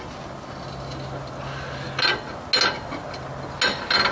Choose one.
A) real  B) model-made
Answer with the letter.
A